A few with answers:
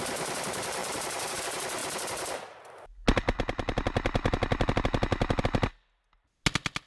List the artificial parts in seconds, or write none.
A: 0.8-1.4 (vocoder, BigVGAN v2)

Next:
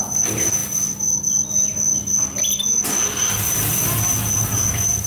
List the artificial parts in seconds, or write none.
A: none

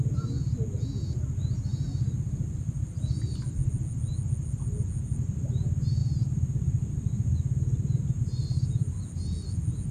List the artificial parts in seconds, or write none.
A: none

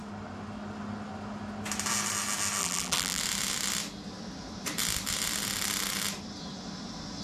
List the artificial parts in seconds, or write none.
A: 2.6-3.2 (vocoder, BigVGAN v2)